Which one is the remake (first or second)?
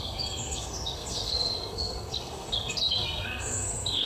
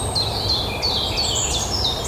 first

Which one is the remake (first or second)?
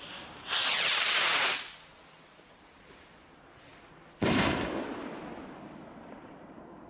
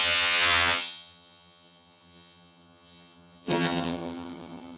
second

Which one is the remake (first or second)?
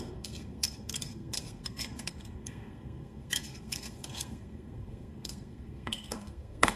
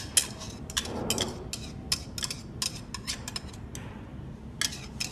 first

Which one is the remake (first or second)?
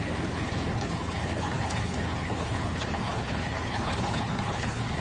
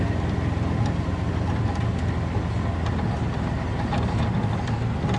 first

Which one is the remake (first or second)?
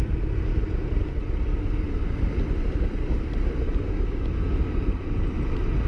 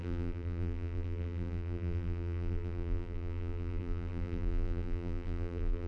second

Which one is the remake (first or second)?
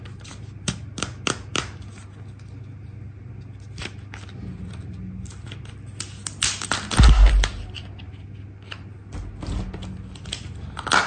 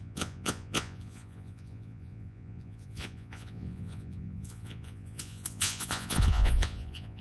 second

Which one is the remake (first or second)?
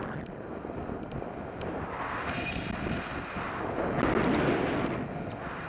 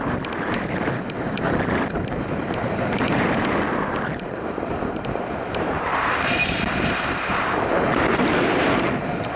second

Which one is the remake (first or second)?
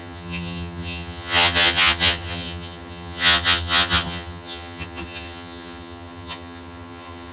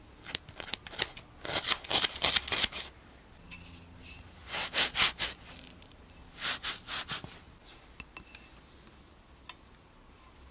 first